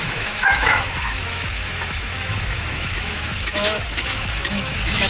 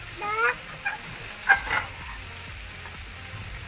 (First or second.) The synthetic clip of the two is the first